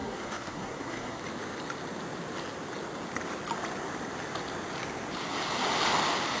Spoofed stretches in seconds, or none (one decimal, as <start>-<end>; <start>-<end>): 0.0-1.2